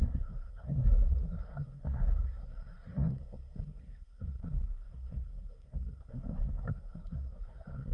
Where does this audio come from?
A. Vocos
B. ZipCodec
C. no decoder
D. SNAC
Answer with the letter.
D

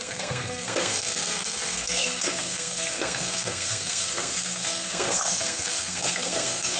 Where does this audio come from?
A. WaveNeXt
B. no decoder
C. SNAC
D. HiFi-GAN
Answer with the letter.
C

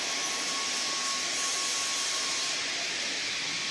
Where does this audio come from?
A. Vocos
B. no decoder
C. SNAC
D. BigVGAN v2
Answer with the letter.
B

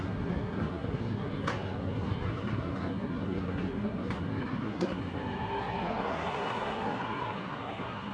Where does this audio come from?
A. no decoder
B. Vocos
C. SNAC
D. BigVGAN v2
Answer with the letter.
C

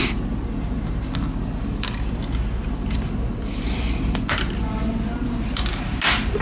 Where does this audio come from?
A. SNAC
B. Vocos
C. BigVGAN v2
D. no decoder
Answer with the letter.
D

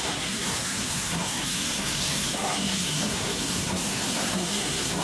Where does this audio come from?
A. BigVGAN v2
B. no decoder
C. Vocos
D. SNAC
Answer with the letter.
D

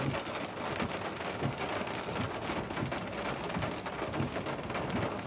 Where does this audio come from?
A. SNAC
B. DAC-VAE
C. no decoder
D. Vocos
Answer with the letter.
C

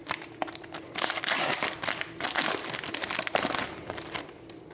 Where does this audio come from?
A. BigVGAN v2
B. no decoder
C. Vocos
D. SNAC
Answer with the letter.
B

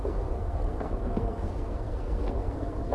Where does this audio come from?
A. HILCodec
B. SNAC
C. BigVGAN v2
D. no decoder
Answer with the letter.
B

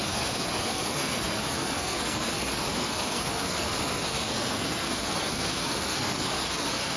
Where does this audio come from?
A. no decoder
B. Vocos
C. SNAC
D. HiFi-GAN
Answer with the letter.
C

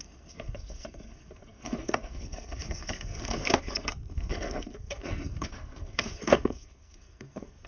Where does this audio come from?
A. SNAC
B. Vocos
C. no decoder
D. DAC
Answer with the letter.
A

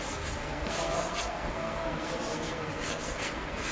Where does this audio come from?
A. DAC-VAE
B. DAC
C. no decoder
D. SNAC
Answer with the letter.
D